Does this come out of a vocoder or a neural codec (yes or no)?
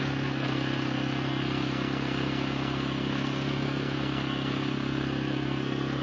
yes